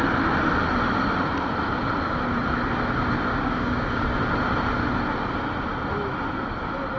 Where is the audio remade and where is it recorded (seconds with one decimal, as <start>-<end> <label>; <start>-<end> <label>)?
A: 0.0-3.3 recorded; 3.3-4.0 remade; 4.0-7.0 recorded